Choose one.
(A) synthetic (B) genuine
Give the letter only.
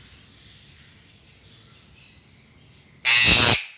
B